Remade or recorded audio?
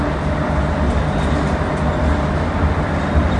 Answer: recorded